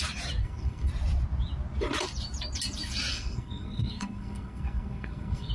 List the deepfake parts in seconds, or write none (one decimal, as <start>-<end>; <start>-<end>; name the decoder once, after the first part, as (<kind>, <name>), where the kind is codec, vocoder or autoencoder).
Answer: 0.4-0.9 (codec, SNAC); 3.1-5.5